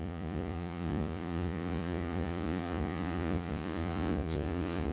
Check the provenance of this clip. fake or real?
fake